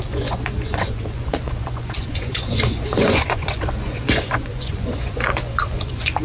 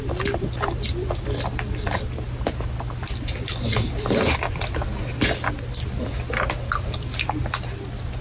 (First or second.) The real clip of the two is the second